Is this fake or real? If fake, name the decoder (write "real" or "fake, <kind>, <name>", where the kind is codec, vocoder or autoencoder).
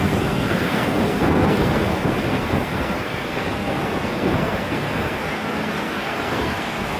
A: fake, codec, SNAC